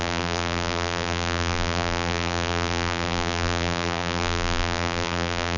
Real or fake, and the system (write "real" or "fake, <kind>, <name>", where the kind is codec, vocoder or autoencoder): fake, vocoder, BigVGAN v2